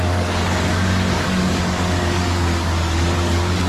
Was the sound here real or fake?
fake